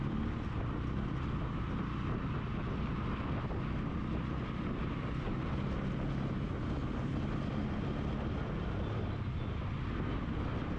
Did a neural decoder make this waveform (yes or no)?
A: no